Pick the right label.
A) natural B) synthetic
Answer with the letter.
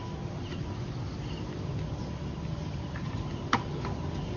A